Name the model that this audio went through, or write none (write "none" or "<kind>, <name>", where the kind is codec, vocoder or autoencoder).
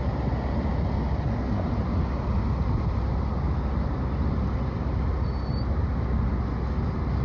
none